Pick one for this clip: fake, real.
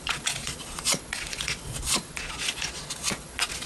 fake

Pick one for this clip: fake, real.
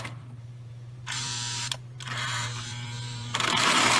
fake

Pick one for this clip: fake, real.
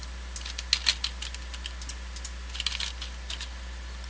real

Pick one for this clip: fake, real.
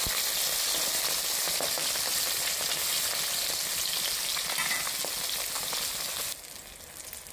real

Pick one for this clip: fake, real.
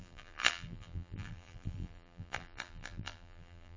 fake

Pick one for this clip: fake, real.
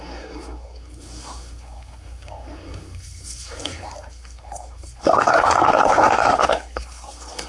fake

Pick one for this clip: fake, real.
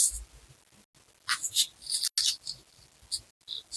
real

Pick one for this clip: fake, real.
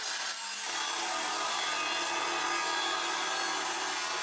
real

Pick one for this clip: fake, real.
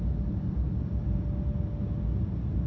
real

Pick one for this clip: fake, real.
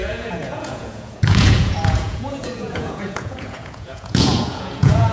fake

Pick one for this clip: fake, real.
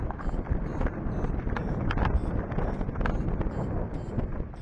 real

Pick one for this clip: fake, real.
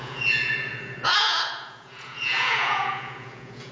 fake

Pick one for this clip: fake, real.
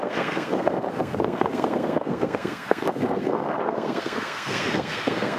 fake